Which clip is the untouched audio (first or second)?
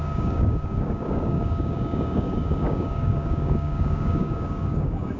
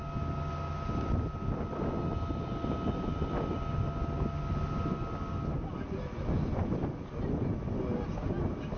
second